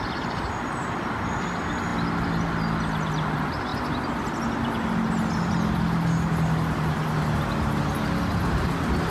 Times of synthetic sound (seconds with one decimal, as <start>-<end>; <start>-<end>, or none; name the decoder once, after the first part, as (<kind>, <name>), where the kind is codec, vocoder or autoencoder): none